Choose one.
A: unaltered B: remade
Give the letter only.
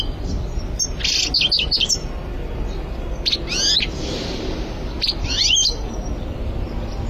A